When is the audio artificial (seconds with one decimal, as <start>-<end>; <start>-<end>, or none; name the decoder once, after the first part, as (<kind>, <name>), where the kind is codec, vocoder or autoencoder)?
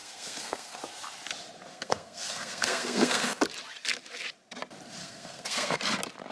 0.0-0.8 (codec, SNAC); 1.7-3.4; 5.0-5.8